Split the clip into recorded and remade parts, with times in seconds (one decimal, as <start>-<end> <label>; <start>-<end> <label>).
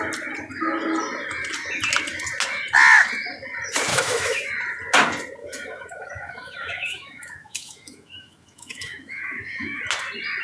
0.0-3.9 recorded; 3.9-4.4 remade; 4.4-5.4 recorded; 5.4-9.8 remade; 9.8-10.4 recorded